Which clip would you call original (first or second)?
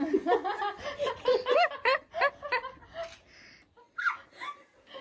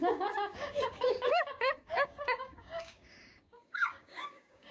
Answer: first